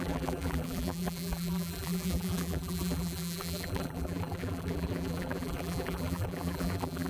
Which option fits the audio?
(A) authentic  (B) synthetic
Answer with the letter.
B